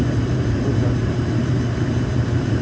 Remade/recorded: remade